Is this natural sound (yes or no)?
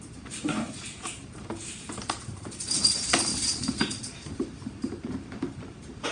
no